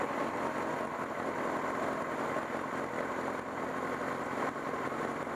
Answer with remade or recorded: recorded